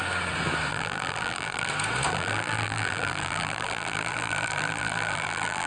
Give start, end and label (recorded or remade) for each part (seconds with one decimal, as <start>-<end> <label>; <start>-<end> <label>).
0.0-0.7 recorded; 0.7-1.7 remade; 1.7-2.1 recorded; 2.1-5.7 remade